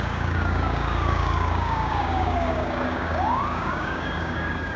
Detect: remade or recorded remade